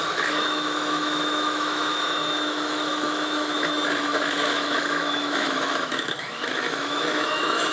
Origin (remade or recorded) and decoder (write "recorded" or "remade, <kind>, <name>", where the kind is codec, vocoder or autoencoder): remade, autoencoder, DAC-VAE